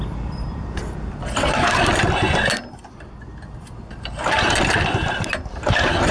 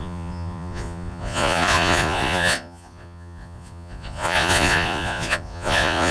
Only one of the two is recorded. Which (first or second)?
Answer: first